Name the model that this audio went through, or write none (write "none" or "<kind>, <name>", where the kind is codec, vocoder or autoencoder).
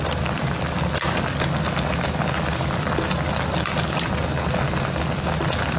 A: none